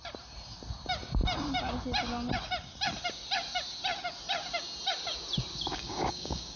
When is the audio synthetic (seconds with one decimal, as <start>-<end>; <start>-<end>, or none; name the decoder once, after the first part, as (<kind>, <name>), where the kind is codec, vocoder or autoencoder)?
5.7-6.6 (codec, DAC)